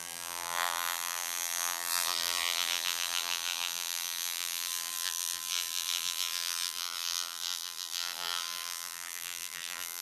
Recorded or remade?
remade